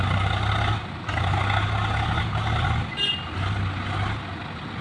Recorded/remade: recorded